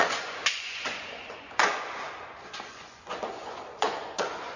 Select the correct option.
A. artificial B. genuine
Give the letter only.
A